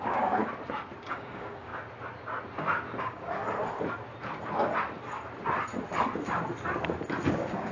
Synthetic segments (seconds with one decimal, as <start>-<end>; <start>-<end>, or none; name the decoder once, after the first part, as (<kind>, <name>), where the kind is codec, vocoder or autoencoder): 0.0-0.4 (codec, DAC); 1.1-1.7; 3.0-3.4; 7.3-7.7

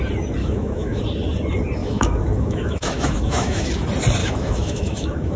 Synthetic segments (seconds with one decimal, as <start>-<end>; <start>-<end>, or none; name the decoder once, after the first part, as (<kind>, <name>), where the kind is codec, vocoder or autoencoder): 0.4-1.0 (autoencoder, DAC-VAE); 1.8-3.7; 4.2-5.4

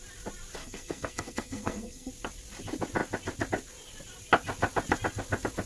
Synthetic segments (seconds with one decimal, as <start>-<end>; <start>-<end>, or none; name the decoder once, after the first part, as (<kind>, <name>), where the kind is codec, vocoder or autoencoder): 0.6-2.1 (codec, SNAC)

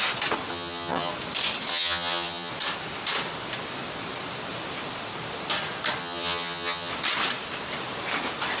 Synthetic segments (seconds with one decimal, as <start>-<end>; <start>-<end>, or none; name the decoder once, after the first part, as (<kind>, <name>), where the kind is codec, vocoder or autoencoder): 0.5-1.1 (vocoder, HiFi-GAN); 1.7-2.5; 6.0-6.9

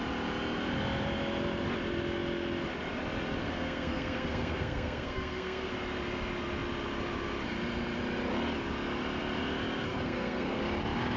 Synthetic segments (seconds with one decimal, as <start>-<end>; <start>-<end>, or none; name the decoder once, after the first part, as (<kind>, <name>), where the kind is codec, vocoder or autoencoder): 3.4-5.7 (codec, SNAC); 9.9-10.6

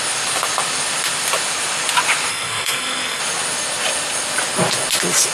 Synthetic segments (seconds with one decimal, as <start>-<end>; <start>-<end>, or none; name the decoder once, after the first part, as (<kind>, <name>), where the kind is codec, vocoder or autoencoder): 2.3-3.2 (codec, SNAC)

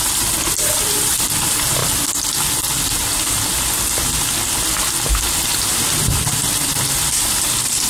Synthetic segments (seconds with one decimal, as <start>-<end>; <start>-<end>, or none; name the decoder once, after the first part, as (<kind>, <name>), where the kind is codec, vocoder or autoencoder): 0.0-1.8 (vocoder, BigVGAN v2); 5.7-7.9